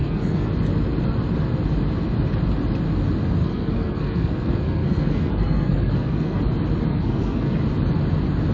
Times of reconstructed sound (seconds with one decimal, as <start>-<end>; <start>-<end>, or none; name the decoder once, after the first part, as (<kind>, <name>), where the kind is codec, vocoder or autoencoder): 0.0-0.5 (codec, SNAC); 3.4-6.4; 6.9-7.6